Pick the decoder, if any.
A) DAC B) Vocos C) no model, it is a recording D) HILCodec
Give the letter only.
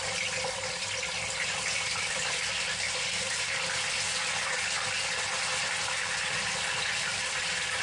C